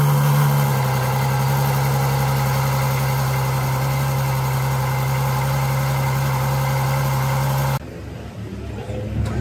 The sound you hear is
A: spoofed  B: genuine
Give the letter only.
B